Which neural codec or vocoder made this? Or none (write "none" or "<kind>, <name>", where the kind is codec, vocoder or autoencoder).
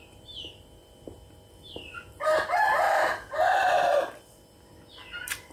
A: vocoder, BigVGAN v2